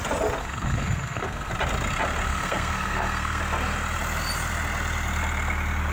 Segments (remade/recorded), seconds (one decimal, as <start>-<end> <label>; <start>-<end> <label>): 0.0-0.4 recorded; 0.4-1.5 remade; 1.5-2.3 recorded; 2.3-3.4 remade; 3.4-5.9 recorded